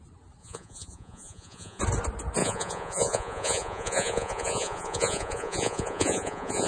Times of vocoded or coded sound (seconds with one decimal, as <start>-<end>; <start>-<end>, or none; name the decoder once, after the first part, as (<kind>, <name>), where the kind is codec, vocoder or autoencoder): 0.4-1.8 (vocoder, Vocos); 2.4-6.7